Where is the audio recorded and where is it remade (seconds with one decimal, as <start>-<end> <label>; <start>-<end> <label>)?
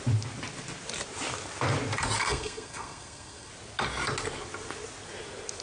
0.0-2.2 recorded; 2.2-3.5 remade; 3.5-5.6 recorded